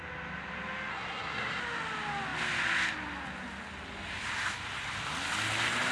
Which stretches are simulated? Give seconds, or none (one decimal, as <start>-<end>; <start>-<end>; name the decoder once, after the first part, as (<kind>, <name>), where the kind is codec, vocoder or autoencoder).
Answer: 0.9-1.6 (codec, SNAC)